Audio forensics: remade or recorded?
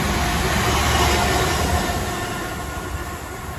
recorded